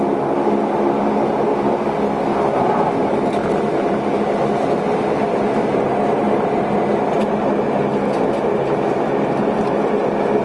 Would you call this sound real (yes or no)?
yes